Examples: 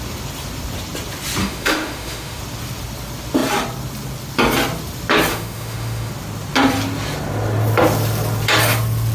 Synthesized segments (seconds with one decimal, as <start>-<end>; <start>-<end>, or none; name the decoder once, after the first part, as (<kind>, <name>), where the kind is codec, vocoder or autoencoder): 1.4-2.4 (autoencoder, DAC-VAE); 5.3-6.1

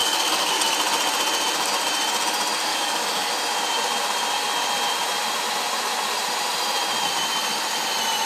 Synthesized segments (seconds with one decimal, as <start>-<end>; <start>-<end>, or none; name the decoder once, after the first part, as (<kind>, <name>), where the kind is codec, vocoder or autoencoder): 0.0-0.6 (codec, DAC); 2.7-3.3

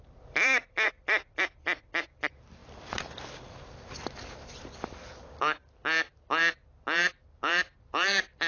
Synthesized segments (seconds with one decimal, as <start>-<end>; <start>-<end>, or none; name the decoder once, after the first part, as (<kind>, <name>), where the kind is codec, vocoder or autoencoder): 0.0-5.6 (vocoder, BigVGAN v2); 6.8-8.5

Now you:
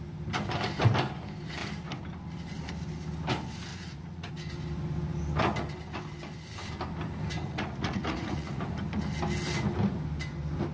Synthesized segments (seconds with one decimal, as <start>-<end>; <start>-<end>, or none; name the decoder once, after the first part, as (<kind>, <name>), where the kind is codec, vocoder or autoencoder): 3.7-4.3 (vocoder, Vocos); 7.4-8.6